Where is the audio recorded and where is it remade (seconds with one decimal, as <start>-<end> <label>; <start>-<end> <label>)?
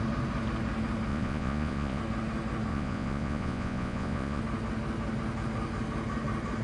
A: 0.0-1.1 recorded; 1.1-2.0 remade; 2.0-2.7 recorded; 2.7-4.4 remade; 4.4-6.6 recorded